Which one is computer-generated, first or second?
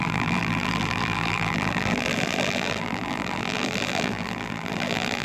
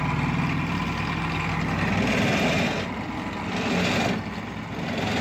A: first